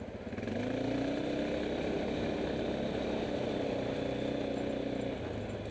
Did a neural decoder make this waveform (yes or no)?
no